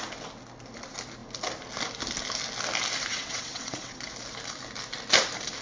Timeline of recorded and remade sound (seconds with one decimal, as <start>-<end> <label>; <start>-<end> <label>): 0.0-3.1 recorded; 3.1-4.0 remade; 4.0-5.6 recorded